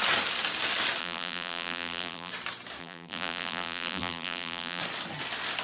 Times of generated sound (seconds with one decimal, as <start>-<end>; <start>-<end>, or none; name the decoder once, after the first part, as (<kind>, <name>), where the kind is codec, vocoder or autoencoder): 1.0-2.3 (vocoder, BigVGAN v2); 2.8-4.8